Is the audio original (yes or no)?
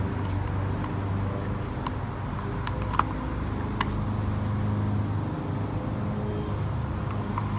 yes